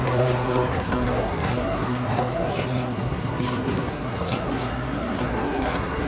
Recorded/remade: remade